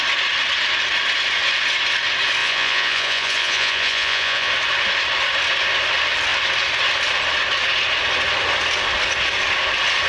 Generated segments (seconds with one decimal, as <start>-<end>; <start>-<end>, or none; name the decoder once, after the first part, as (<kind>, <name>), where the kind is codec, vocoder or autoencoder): 2.4-4.5 (vocoder, Vocos)